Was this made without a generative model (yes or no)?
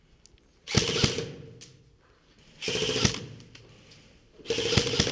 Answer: yes